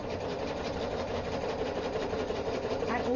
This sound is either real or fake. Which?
fake